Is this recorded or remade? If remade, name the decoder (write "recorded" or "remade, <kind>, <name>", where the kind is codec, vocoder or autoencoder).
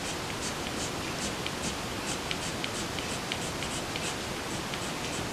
recorded